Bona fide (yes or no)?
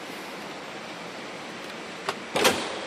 yes